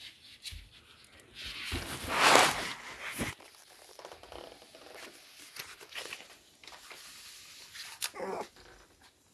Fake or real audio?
real